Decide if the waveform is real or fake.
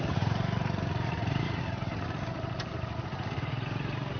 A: fake